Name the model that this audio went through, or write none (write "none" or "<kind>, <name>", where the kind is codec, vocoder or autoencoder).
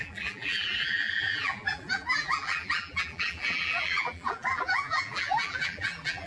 vocoder, BigVGAN v2